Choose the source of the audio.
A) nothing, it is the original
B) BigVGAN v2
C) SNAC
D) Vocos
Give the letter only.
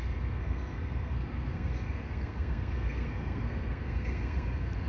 C